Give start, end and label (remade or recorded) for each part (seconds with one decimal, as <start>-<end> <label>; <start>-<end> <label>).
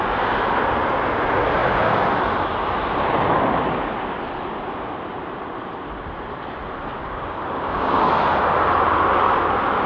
0.0-7.0 recorded; 7.0-8.0 remade; 8.0-9.9 recorded